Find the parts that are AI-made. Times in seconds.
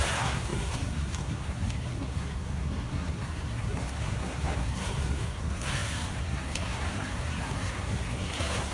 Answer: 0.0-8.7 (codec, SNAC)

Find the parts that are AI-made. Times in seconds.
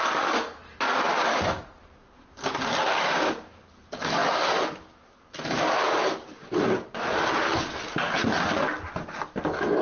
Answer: none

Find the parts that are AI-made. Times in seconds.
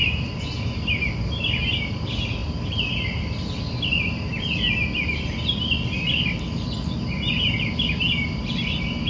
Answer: none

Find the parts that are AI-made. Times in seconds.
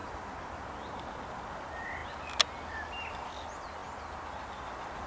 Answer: none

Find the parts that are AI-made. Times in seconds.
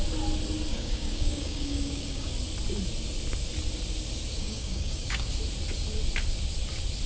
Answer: 0.7-2.3 (codec, DAC); 4.4-5.3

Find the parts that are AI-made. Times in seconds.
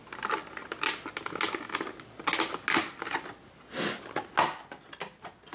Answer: none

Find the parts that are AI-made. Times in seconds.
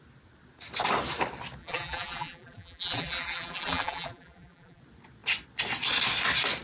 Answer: 1.6-4.8 (vocoder, BigVGAN v2)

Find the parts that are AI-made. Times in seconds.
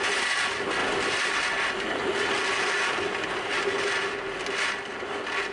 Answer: none